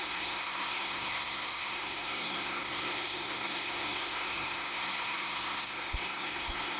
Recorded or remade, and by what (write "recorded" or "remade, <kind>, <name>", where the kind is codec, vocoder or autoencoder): remade, codec, SNAC